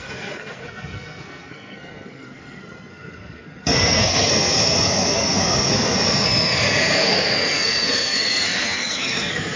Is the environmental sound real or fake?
fake